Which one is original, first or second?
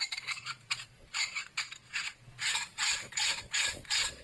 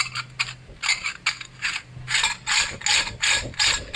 second